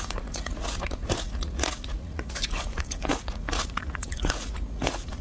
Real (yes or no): no